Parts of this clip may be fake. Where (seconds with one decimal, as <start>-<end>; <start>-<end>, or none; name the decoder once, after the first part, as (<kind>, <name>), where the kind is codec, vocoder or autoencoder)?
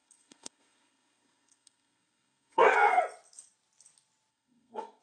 0.0-3.0 (codec, SNAC); 4.3-5.0